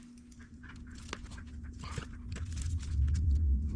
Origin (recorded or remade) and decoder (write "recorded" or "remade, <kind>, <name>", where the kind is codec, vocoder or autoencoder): recorded